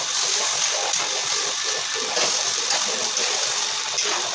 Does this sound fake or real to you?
real